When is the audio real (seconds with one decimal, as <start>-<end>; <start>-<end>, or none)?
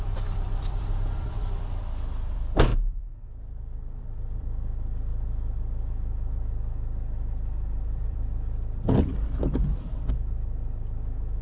none